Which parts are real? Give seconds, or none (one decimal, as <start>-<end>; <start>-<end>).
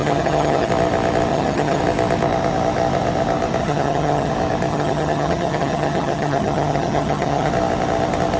0.7-1.3; 1.8-3.6; 4.3-4.7; 7.5-8.4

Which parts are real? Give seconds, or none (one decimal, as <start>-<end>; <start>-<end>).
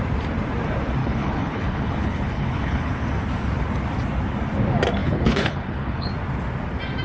0.0-1.0; 2.9-5.0; 6.1-7.0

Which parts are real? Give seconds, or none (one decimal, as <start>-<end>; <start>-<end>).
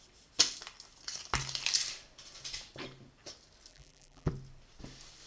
0.0-3.7; 4.3-5.3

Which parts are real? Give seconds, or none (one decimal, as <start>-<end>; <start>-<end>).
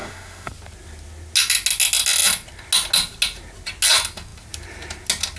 0.5-5.4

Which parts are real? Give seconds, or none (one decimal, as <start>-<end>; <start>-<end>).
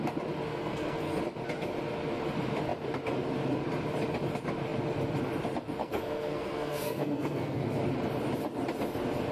0.0-0.5; 1.2-5.8; 7.6-9.3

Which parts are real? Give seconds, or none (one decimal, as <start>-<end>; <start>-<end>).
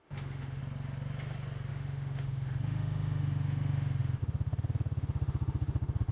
0.6-1.7